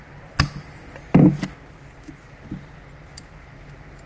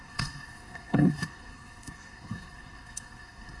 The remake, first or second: second